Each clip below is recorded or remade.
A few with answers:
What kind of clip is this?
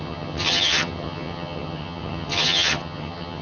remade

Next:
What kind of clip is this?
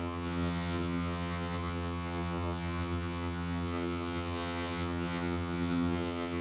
remade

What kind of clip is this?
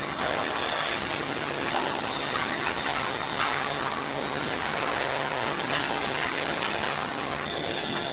remade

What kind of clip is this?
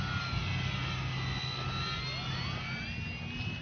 recorded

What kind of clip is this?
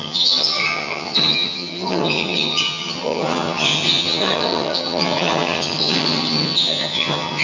remade